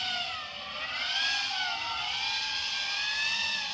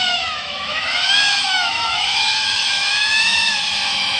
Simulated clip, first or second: second